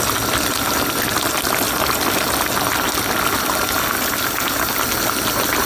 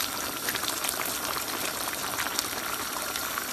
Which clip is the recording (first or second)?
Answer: first